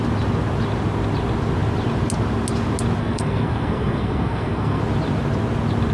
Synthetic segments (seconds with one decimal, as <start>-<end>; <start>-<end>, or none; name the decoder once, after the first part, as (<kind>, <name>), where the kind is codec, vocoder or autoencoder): 3.0-4.8 (codec, SNAC)